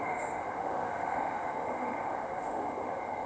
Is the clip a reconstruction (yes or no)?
yes